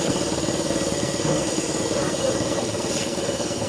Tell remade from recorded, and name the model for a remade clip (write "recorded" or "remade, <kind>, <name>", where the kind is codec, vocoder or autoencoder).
remade, codec, SNAC